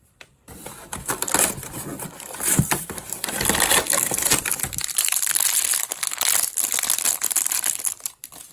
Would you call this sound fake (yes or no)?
yes